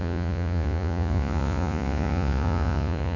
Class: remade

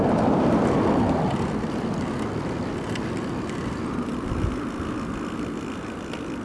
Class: remade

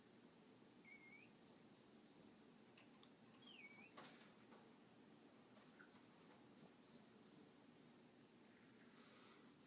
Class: recorded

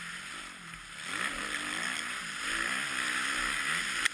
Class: recorded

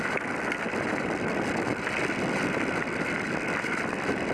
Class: recorded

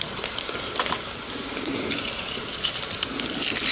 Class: recorded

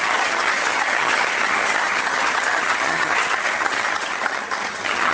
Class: remade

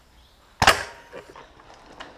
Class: recorded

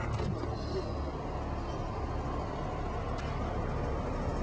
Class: recorded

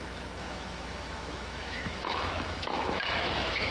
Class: remade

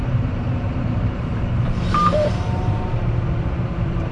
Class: remade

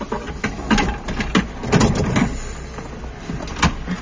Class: recorded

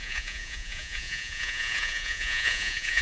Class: remade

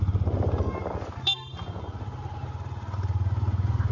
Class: recorded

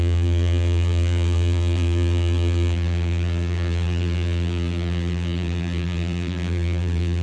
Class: remade